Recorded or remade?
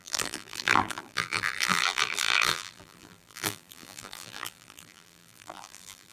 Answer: remade